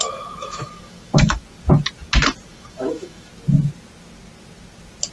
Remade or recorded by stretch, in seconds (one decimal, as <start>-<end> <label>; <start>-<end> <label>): 0.0-1.4 remade; 1.4-2.5 recorded; 2.5-3.3 remade; 3.3-5.1 recorded